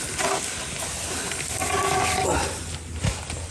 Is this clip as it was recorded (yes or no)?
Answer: yes